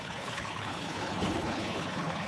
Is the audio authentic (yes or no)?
no